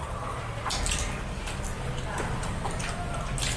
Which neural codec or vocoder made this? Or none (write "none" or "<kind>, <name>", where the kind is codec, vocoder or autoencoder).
none